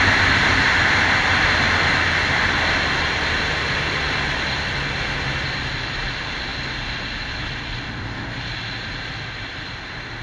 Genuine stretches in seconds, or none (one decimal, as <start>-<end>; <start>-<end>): 0.0-10.2